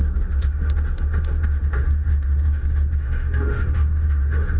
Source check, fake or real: fake